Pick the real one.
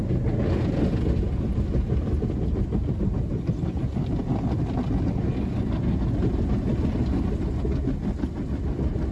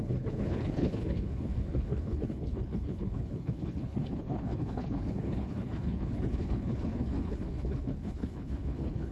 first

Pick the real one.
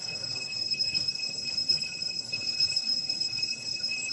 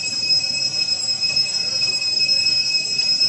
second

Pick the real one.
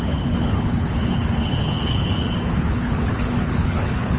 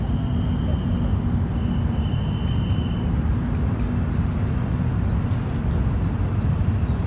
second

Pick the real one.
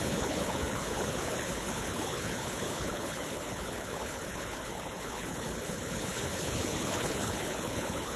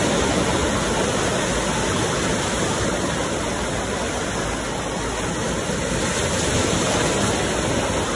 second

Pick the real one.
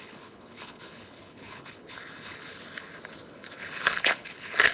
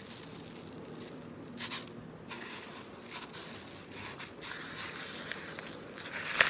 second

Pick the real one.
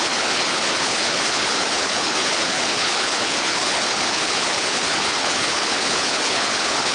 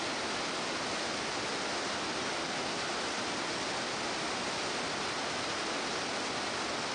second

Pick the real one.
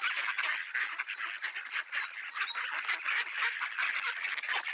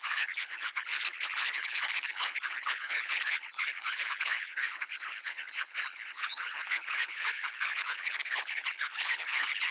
first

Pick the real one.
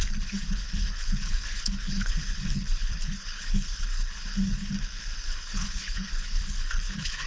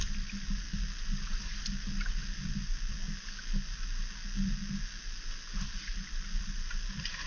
second